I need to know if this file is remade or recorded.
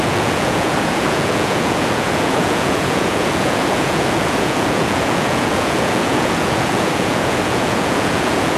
remade